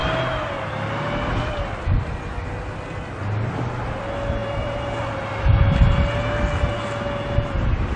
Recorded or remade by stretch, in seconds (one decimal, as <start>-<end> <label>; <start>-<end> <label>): 0.0-4.4 recorded; 4.4-5.3 remade; 5.3-8.0 recorded